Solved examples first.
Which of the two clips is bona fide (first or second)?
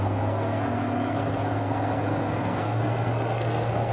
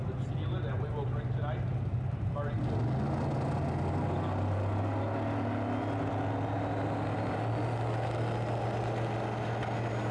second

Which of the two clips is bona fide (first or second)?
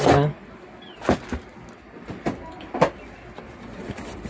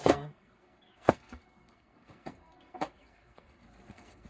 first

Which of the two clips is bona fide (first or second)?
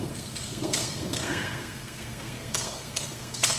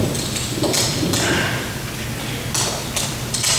second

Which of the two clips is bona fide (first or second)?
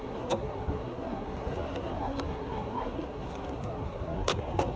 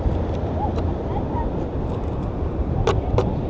second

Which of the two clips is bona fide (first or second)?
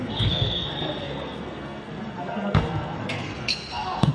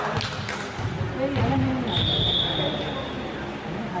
second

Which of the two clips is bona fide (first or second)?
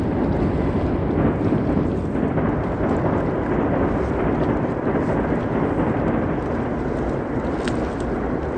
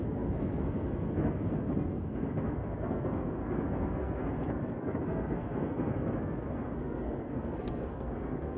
first